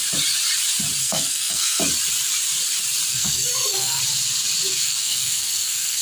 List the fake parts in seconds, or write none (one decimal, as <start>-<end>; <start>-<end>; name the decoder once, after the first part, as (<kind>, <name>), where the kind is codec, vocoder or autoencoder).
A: 1.0-1.8 (codec, SNAC); 3.1-4.0; 4.7-6.0